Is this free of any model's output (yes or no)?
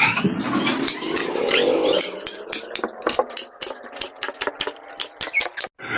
yes